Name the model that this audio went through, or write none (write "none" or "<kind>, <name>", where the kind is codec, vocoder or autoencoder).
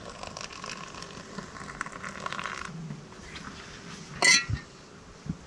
none